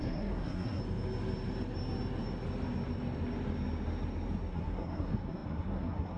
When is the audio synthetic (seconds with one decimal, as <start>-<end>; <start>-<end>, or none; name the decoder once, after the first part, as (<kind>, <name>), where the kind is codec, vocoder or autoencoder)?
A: 0.0-0.8 (codec, SNAC); 4.5-6.2